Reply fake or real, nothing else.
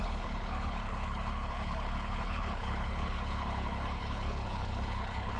fake